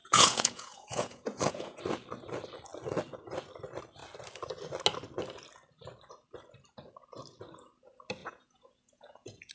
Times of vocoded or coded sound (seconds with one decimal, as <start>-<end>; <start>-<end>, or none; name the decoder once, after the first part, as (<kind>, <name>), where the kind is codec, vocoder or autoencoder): 0.0-1.8 (vocoder, Vocos); 8.2-9.5